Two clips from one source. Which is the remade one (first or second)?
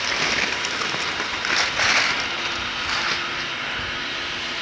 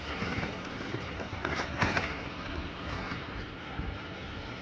second